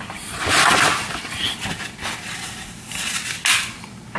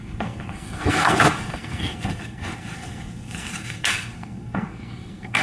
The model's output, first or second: second